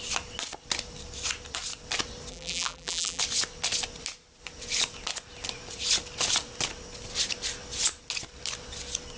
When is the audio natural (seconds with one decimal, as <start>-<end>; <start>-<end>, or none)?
0.0-2.3; 3.2-9.2